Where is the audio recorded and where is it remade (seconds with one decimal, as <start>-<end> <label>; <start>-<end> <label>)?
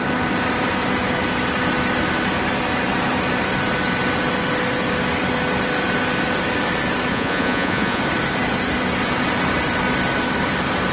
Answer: 0.0-7.1 recorded; 7.1-8.0 remade; 8.0-10.9 recorded